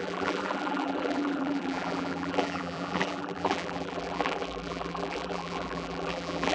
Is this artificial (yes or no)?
yes